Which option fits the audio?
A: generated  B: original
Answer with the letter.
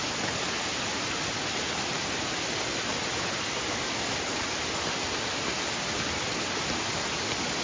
B